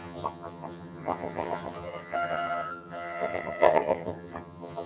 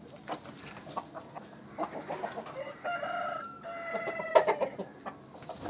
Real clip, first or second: second